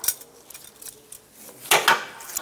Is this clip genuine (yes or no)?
yes